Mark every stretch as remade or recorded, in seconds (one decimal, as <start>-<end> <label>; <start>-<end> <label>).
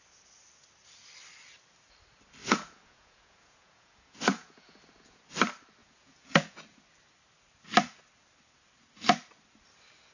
0.0-2.4 recorded; 2.4-5.2 remade; 5.2-5.8 recorded; 5.8-6.8 remade; 6.8-10.1 recorded